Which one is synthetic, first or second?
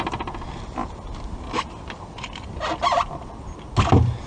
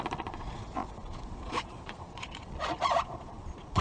second